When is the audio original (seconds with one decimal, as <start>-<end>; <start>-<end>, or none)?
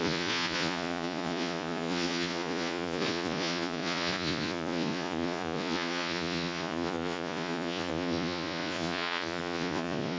none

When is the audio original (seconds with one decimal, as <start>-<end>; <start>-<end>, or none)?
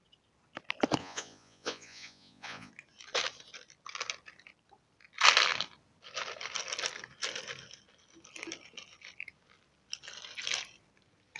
0.0-1.0; 2.7-11.4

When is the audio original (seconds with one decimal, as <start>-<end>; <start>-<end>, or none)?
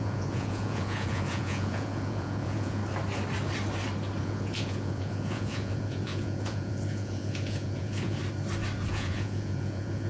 2.8-4.2; 8.2-8.9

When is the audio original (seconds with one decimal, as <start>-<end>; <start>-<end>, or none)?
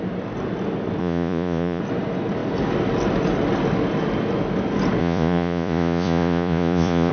0.0-1.0; 1.8-5.0